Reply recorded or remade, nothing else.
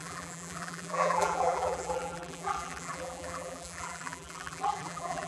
remade